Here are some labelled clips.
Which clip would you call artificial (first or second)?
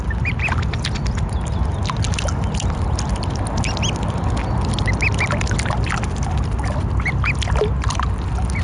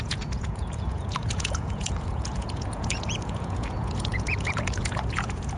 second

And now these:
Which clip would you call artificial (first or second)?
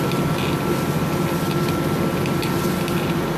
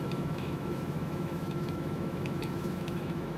second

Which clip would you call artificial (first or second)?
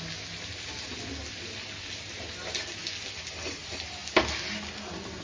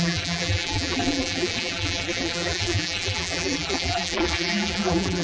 second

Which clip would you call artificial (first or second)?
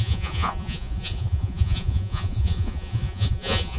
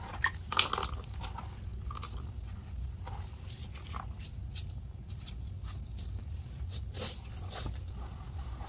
first